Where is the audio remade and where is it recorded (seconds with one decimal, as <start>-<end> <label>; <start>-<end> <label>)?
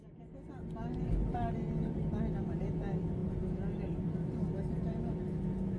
0.0-5.8 recorded